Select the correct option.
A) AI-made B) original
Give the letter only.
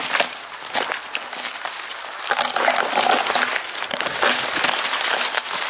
B